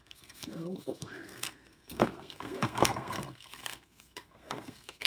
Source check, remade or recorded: remade